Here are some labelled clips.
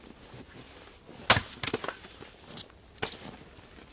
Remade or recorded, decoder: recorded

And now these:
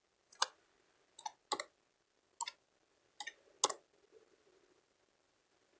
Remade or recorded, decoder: recorded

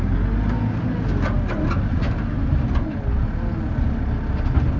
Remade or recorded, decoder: recorded